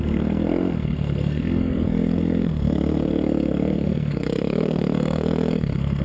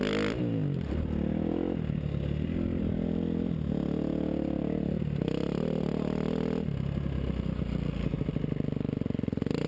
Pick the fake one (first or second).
first